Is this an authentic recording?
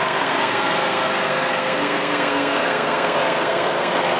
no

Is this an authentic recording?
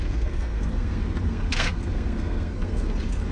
no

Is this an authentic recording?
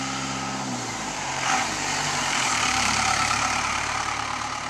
no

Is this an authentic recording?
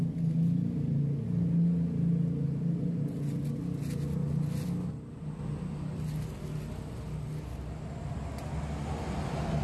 yes